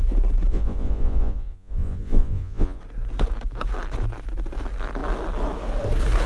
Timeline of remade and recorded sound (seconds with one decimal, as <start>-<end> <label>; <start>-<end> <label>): 0.0-0.5 recorded; 0.5-2.8 remade; 2.8-6.3 recorded

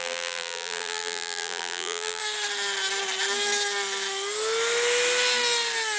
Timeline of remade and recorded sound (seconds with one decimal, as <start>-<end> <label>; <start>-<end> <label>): 0.0-2.2 remade; 2.2-6.0 recorded

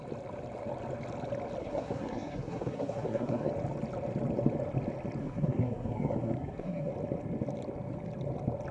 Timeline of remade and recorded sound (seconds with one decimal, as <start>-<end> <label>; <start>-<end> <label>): 0.0-1.6 recorded; 1.6-3.5 remade; 3.5-5.2 recorded; 5.2-6.9 remade; 6.9-8.7 recorded

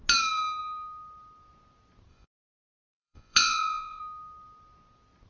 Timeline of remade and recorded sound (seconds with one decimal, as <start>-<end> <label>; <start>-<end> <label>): 0.0-2.1 recorded; 2.1-4.0 remade; 4.0-5.3 recorded

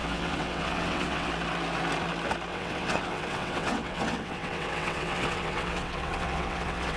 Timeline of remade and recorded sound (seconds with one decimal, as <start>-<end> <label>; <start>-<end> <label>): 0.0-1.3 remade; 1.3-2.5 recorded; 2.5-7.0 remade

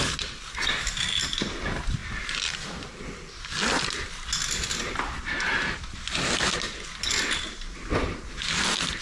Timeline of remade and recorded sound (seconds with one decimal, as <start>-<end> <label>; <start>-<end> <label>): 0.0-9.0 recorded

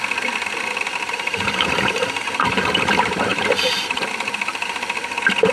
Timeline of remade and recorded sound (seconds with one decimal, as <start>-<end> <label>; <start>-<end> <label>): 0.0-0.9 recorded; 0.9-2.7 remade; 2.7-3.3 recorded; 3.3-4.0 remade; 4.0-5.5 recorded